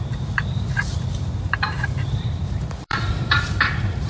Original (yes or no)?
no